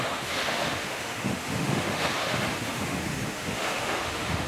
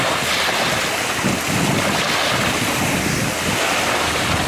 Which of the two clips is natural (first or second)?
second